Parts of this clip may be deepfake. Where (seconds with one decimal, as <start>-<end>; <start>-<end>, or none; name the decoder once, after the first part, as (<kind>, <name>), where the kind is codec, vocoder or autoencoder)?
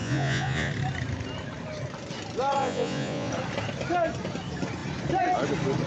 0.0-0.7 (vocoder, Vocos); 2.6-3.3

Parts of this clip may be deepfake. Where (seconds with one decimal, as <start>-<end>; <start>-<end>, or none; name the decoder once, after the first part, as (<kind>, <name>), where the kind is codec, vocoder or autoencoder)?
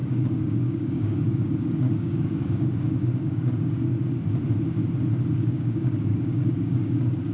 0.0-3.9 (codec, DAC); 5.3-7.3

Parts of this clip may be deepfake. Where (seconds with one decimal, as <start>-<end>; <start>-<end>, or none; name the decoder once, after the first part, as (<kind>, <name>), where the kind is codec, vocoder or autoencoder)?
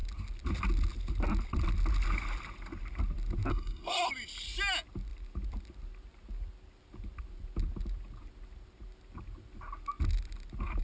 3.5-4.1 (codec, SNAC)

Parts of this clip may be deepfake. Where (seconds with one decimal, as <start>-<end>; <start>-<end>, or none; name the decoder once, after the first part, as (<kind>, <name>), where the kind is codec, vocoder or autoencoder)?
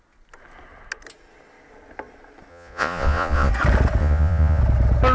2.5-3.5 (vocoder, Vocos); 4.0-4.6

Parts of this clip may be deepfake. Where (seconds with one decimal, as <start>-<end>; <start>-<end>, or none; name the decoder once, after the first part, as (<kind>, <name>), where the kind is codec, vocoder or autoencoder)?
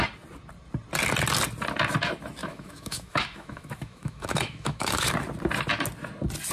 2.4-5.1 (autoencoder, DAC-VAE)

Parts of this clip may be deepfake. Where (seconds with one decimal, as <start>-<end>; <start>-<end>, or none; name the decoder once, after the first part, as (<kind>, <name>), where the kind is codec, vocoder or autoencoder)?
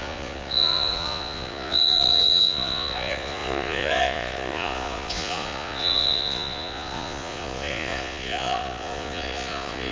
0.0-9.9 (vocoder, Vocos)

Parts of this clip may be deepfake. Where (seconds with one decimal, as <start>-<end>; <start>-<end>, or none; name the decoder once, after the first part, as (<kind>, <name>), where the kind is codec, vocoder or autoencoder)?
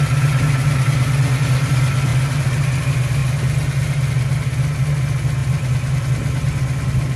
2.1-2.8 (vocoder, BigVGAN v2); 5.4-6.0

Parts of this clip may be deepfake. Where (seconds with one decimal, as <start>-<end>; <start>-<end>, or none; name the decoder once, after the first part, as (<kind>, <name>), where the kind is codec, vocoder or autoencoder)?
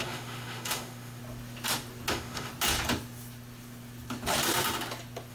0.0-1.2 (autoencoder, DAC-VAE); 2.1-2.5